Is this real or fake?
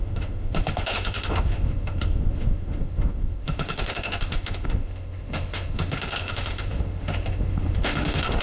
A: fake